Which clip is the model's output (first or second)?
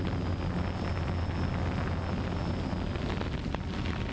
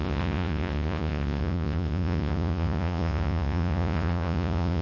second